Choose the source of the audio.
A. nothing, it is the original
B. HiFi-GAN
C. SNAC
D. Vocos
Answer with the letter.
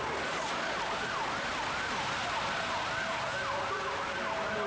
A